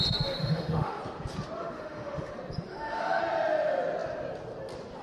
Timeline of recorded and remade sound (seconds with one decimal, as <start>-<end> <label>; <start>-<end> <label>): 0.0-0.4 recorded; 0.4-1.0 remade; 1.0-1.6 recorded; 1.6-2.3 remade; 2.3-2.7 recorded; 2.7-3.2 remade; 3.2-5.0 recorded